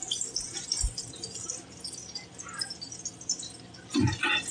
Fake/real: real